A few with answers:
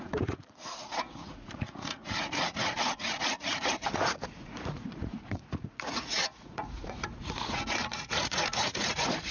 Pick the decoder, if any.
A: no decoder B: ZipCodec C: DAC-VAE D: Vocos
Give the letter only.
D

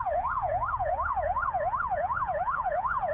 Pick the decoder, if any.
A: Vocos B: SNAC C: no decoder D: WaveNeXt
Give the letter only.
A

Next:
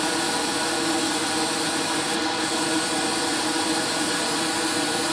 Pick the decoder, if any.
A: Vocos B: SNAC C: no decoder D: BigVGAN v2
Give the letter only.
C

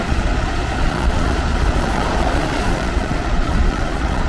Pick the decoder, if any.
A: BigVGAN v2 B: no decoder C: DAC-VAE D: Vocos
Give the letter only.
D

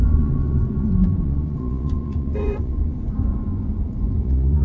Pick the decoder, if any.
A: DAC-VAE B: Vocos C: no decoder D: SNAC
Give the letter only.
B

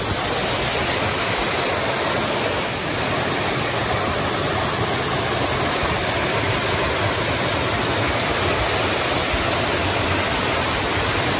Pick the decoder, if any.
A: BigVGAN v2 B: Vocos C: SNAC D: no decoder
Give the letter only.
D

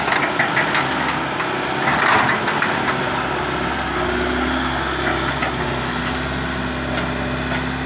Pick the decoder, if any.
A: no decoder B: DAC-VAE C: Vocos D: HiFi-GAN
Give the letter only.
A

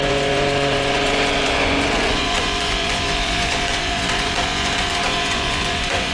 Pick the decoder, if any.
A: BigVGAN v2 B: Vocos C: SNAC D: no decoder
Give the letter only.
B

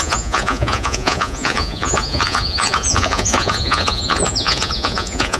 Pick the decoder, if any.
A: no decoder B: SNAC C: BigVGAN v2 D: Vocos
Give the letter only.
D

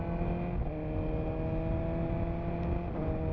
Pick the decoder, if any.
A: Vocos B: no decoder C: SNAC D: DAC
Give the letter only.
B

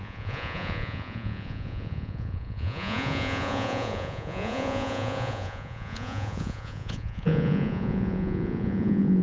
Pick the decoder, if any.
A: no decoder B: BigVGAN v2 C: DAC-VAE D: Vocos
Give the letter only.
D